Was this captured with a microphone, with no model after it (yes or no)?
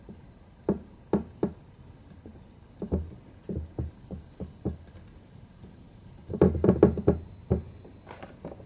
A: yes